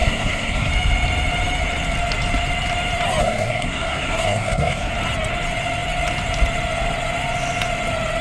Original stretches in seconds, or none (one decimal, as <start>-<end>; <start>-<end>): 0.7-3.2; 4.9-8.2